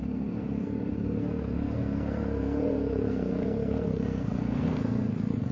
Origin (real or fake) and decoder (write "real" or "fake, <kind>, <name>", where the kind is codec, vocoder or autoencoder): fake, codec, SNAC